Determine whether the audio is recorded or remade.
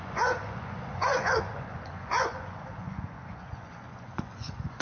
remade